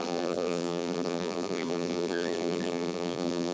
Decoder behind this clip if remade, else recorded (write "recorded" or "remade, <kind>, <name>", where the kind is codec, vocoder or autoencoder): remade, vocoder, BigVGAN v2